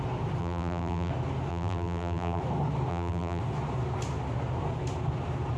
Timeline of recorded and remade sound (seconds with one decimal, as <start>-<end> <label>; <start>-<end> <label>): 0.0-0.4 recorded; 0.4-1.1 remade; 1.1-1.5 recorded; 1.5-2.4 remade; 2.4-2.9 recorded; 2.9-3.4 remade; 3.4-5.6 recorded